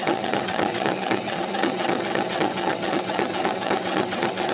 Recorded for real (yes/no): no